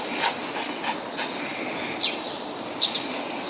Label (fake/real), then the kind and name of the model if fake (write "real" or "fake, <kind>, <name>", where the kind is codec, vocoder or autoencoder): real